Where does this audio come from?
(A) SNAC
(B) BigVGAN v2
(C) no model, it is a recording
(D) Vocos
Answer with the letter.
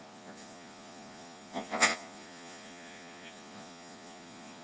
D